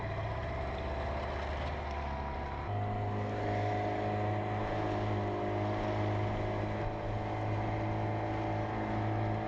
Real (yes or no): yes